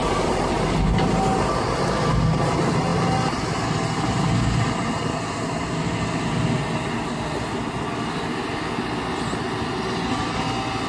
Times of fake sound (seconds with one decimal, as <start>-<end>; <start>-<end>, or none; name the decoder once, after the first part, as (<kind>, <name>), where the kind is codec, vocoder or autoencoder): none